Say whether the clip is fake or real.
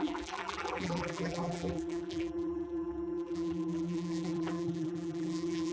fake